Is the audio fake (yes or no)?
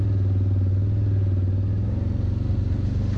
no